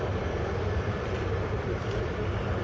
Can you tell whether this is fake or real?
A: fake